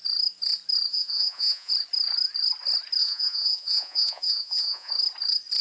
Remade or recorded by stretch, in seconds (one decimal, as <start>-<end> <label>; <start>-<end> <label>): 0.0-0.9 recorded; 0.9-1.7 remade; 1.7-3.0 recorded; 3.0-4.9 remade; 4.9-5.6 recorded

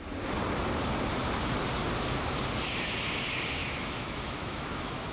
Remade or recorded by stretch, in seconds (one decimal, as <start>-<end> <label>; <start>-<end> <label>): 0.0-3.6 recorded; 3.6-5.1 remade

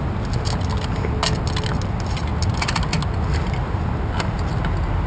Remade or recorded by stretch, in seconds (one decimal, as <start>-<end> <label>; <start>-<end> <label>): 0.0-5.1 recorded

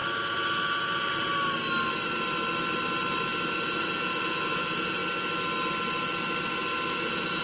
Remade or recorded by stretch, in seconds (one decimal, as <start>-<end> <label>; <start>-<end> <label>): 0.0-3.8 recorded; 3.8-5.0 remade; 5.0-6.9 recorded; 6.9-7.4 remade

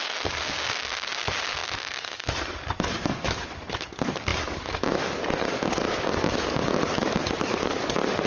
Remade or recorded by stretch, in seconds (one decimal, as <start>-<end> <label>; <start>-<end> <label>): 0.0-8.3 remade